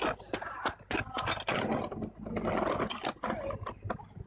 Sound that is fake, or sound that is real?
real